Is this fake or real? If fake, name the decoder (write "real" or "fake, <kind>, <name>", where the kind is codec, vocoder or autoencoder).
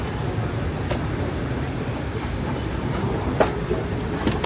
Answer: fake, vocoder, BigVGAN v2